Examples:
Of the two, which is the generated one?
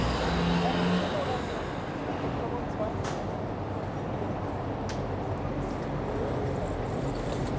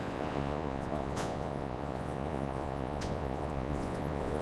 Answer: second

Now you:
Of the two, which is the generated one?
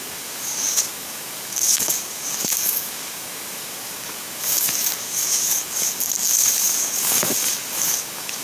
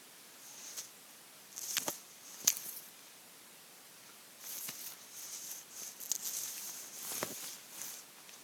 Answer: first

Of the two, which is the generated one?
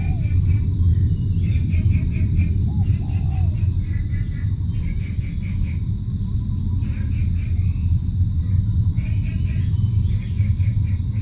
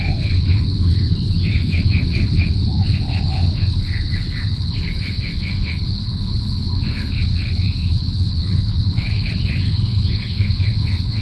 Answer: second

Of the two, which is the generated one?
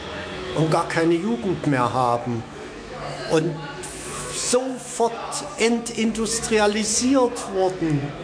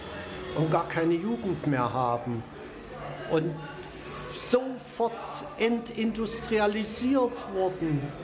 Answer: first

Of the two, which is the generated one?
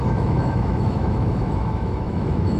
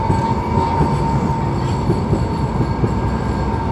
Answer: first